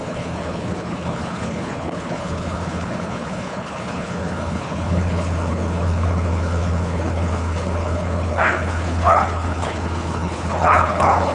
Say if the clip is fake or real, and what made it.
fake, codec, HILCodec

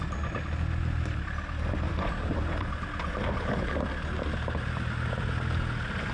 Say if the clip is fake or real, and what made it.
real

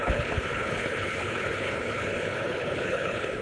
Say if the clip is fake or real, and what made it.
fake, codec, HILCodec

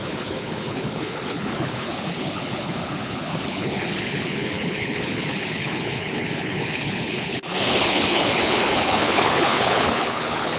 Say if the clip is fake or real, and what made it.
fake, codec, HILCodec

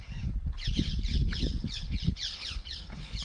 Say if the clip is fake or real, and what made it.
fake, codec, HILCodec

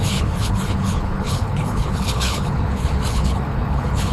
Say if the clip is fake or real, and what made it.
fake, codec, HILCodec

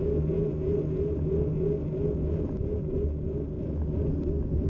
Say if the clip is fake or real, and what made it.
real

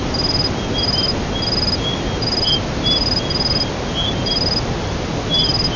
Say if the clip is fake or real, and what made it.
real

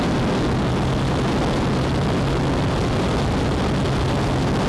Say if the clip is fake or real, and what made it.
real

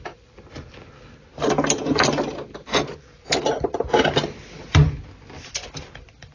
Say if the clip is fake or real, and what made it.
real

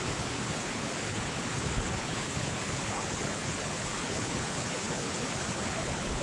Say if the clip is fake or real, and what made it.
fake, codec, HILCodec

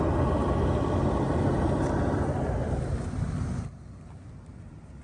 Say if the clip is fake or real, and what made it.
real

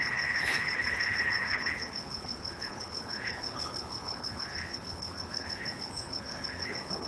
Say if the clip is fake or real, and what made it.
fake, codec, HILCodec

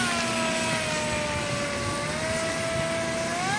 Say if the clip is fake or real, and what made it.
real